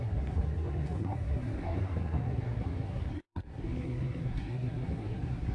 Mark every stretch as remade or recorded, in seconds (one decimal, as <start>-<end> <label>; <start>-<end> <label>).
0.0-5.5 remade